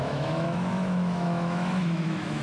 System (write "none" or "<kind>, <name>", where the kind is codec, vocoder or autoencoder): autoencoder, DAC-VAE